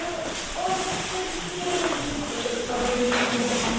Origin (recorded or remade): remade